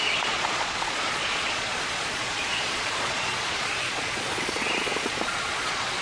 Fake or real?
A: fake